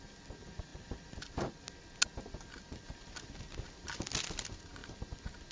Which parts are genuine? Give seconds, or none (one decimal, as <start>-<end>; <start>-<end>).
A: 0.0-5.5